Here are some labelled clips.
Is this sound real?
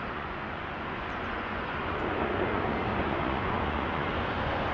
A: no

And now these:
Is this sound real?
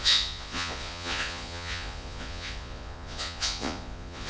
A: no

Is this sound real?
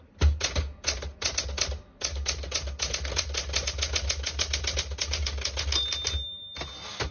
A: yes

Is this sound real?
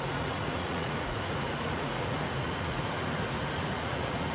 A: no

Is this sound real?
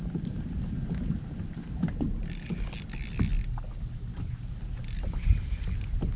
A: yes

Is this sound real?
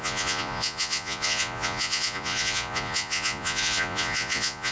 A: no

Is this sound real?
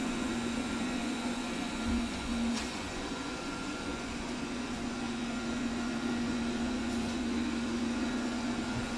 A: no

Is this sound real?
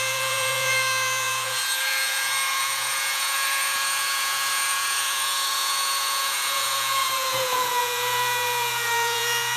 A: no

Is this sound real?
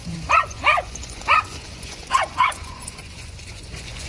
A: no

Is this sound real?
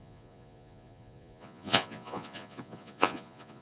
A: no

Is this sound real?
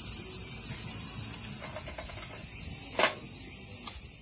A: yes